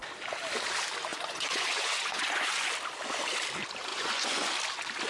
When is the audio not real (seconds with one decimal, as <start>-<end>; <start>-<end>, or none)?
1.1-2.7; 3.9-4.5